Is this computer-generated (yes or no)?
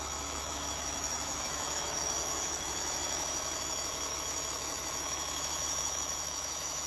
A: yes